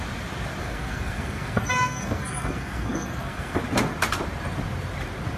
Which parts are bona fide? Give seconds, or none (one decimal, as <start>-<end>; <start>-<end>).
0.0-0.6; 3.6-5.4